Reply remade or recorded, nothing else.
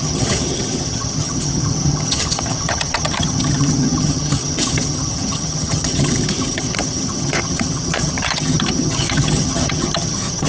remade